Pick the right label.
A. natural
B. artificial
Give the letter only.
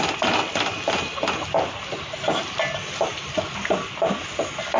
A